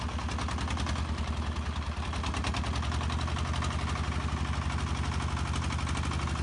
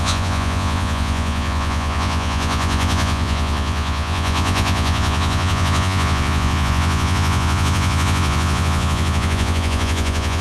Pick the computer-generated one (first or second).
second